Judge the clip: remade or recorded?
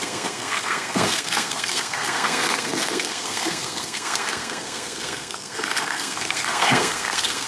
remade